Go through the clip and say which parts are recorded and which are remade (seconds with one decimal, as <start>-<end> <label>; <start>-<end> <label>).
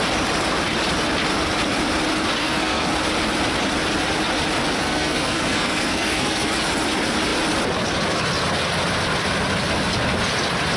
0.0-2.4 recorded; 2.4-2.9 remade; 2.9-4.8 recorded; 4.8-6.5 remade; 6.5-10.8 recorded